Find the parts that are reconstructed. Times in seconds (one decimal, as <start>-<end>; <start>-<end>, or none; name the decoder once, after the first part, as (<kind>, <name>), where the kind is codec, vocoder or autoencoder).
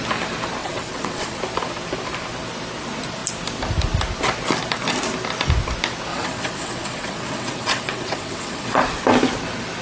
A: 0.6-1.4 (vocoder, WaveNeXt); 6.1-8.8